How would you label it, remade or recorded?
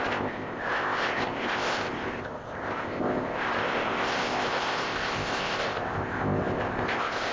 remade